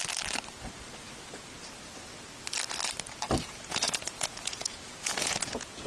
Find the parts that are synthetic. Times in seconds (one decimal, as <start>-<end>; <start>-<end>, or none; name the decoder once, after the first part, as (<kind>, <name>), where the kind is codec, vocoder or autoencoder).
3.5-5.9 (vocoder, Vocos)